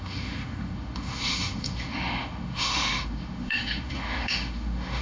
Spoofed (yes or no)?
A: yes